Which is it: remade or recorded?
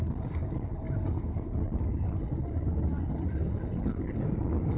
recorded